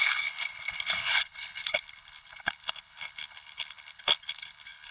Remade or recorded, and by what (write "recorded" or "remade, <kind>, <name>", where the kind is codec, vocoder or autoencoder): remade, codec, HILCodec